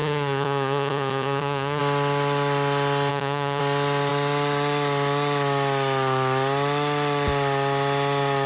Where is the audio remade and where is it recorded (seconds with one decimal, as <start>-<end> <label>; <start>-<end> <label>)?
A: 0.0-1.8 remade; 1.8-3.1 recorded; 3.1-3.6 remade; 3.6-8.5 recorded